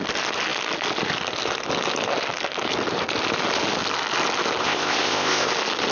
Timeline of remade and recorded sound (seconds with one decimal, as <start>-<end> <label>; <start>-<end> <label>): 0.0-4.6 recorded; 4.6-5.5 remade; 5.5-5.9 recorded